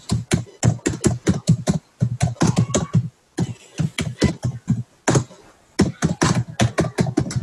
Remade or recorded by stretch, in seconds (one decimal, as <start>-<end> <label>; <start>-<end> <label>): 0.0-7.4 recorded